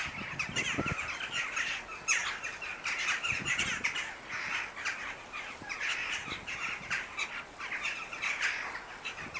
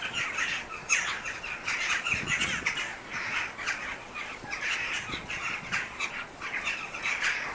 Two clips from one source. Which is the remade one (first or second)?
second